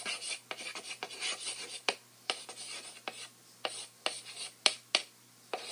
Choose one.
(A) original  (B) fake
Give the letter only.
A